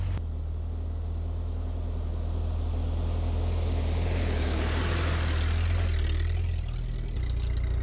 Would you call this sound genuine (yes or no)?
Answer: yes